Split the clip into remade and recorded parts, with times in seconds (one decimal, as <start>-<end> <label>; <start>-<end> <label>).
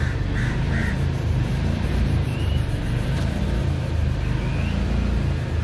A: 0.0-0.8 recorded; 0.8-3.4 remade; 3.4-5.6 recorded